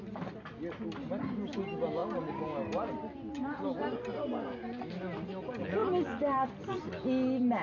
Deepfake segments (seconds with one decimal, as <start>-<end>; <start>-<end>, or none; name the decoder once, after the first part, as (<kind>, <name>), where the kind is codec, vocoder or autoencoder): 5.8-6.8 (vocoder, BigVGAN v2)